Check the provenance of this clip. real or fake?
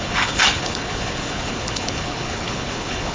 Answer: fake